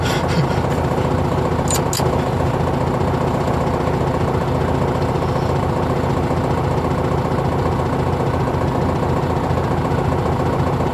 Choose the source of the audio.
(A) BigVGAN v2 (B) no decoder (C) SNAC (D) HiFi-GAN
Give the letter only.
B